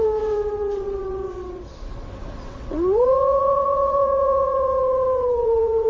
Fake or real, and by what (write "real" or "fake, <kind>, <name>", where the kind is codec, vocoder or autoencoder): fake, vocoder, WaveNeXt